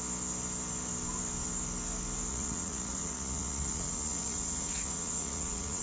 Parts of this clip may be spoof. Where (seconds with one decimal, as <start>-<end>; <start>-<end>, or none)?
2.3-5.8